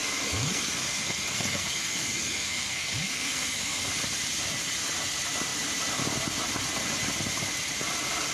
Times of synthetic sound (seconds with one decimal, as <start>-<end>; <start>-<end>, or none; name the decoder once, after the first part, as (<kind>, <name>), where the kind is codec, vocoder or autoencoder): 0.0-3.9 (codec, SNAC)

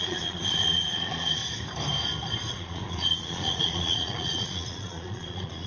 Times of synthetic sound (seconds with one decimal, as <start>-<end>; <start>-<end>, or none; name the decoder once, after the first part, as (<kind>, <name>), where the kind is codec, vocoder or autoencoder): 0.0-1.4 (vocoder, Vocos); 2.5-5.7

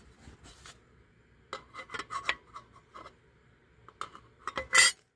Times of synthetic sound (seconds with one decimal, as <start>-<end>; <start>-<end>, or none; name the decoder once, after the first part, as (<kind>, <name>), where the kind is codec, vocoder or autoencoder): none

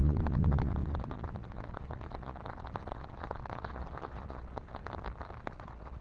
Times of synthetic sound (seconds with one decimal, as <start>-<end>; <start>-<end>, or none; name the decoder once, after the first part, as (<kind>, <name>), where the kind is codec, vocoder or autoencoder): 0.0-4.8 (vocoder, Vocos); 5.4-6.0

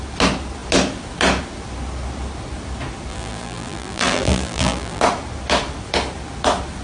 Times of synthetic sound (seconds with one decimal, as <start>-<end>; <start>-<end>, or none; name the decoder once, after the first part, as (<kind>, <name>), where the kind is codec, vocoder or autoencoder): 3.1-5.0 (vocoder, BigVGAN v2)

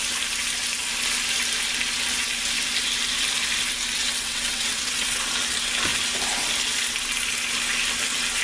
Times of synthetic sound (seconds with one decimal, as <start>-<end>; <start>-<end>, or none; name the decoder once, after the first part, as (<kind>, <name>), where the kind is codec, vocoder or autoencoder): 4.0-5.2 (vocoder, WaveNeXt)